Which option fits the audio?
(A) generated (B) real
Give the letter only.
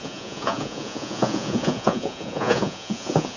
A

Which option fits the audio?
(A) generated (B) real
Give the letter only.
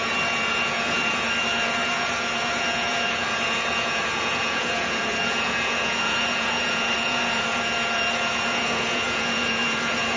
A